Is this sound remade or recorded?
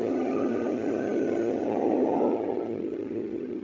remade